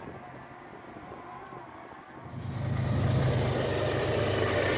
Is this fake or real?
real